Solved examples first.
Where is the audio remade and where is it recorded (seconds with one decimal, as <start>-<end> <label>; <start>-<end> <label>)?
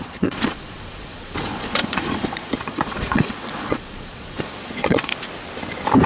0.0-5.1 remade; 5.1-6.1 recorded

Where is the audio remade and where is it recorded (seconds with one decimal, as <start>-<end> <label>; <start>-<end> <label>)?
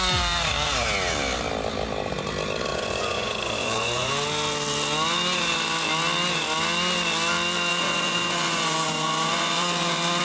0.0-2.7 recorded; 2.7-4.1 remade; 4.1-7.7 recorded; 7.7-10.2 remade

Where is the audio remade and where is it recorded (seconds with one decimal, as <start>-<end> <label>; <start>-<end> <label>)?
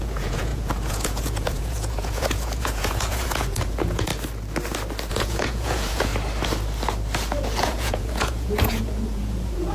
0.0-4.1 remade; 4.1-5.1 recorded; 5.1-6.1 remade; 6.1-7.6 recorded; 7.6-9.7 remade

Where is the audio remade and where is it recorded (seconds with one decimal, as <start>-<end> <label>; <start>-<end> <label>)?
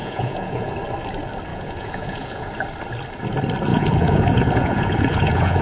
0.0-0.7 remade; 0.7-1.5 recorded; 1.5-2.5 remade; 2.5-3.7 recorded; 3.7-5.6 remade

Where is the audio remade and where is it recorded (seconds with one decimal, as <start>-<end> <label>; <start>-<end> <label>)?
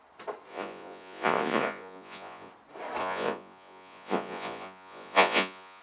0.0-0.5 recorded; 0.5-2.5 remade; 2.5-3.0 recorded; 3.0-5.8 remade